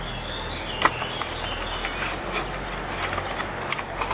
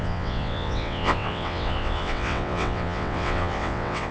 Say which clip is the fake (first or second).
second